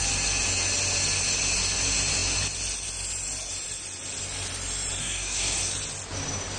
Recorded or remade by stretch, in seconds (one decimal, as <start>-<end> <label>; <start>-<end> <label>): 0.0-5.0 recorded; 5.0-5.7 remade; 5.7-6.6 recorded